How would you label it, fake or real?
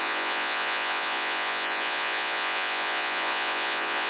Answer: fake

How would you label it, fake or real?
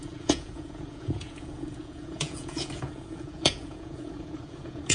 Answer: fake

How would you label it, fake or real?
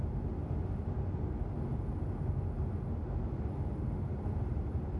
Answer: real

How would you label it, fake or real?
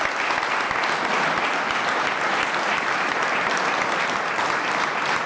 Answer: real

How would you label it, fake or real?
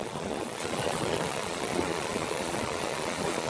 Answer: fake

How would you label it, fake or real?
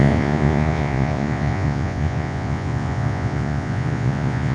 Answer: fake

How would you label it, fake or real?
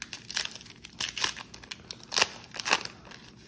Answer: real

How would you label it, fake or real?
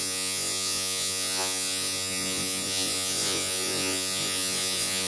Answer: fake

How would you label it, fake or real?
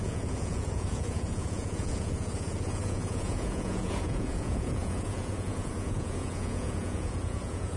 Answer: fake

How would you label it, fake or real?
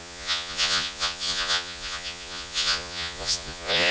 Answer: fake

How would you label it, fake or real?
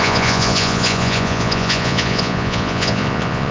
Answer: fake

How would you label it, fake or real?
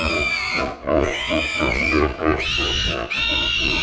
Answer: fake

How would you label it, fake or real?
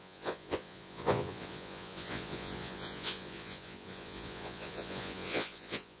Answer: fake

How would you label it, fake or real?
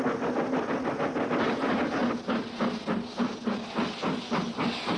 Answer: real